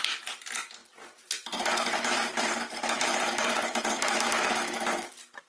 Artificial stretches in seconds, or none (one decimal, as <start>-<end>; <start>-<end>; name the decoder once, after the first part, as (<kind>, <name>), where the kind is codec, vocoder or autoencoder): 0.8-3.8 (vocoder, BigVGAN v2)